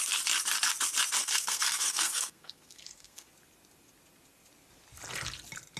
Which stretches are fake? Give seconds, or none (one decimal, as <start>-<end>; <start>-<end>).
1.2-3.3